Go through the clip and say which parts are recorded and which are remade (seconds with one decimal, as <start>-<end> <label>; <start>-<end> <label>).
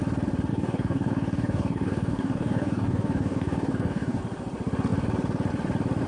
0.0-0.5 recorded; 0.5-4.2 remade; 4.2-6.1 recorded